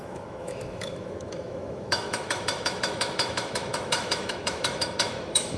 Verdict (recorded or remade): remade